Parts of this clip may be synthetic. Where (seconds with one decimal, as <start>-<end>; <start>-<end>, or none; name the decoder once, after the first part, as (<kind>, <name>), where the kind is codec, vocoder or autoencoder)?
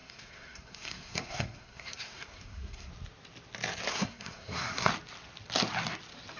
0.0-2.9 (codec, SNAC); 3.9-4.9